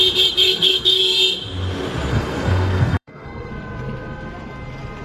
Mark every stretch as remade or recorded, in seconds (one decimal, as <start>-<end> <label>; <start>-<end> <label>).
0.0-0.4 recorded; 0.4-1.0 remade; 1.0-2.1 recorded; 2.1-3.5 remade; 3.5-5.0 recorded